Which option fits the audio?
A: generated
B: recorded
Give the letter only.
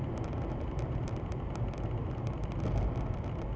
B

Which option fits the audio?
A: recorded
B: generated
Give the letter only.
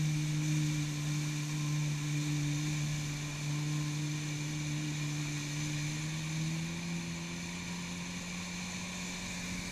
A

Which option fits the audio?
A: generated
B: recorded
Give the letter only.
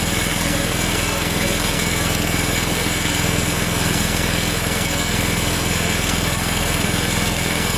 A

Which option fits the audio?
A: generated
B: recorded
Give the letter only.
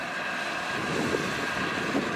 A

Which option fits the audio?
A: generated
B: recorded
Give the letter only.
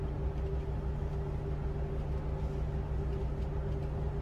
B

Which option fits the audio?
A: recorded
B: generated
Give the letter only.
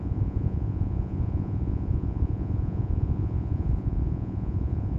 B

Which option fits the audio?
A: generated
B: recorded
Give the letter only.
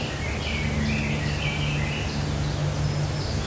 B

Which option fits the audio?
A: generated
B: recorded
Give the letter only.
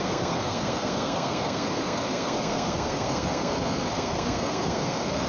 A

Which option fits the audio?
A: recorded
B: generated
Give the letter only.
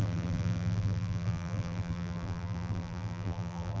B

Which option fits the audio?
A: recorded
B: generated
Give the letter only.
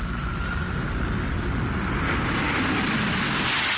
A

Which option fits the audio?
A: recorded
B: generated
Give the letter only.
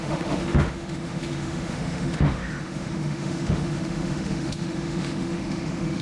B